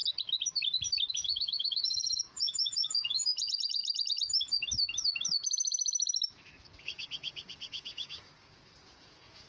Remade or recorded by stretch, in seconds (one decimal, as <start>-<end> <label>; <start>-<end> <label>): 0.0-1.1 recorded; 1.1-3.8 remade; 3.8-6.8 recorded; 6.8-9.5 remade

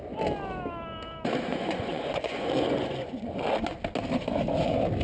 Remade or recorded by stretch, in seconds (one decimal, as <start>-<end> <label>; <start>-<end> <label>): 0.0-1.5 recorded; 1.5-3.4 remade; 3.4-5.0 recorded

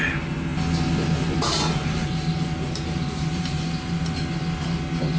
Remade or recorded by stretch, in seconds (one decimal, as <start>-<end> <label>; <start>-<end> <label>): 0.0-1.8 recorded; 1.8-4.2 remade; 4.2-5.2 recorded

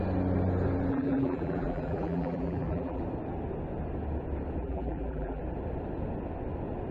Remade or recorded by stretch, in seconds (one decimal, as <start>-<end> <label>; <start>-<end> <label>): 0.0-0.9 recorded; 0.9-3.0 remade; 3.0-4.6 recorded; 4.6-5.4 remade; 5.4-6.9 recorded

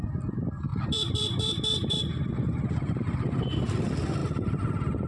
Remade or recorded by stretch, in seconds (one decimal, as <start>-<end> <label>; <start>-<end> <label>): 0.0-0.7 recorded; 0.7-2.0 remade; 2.0-4.2 recorded; 4.2-5.1 remade